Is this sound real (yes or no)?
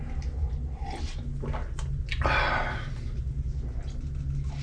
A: yes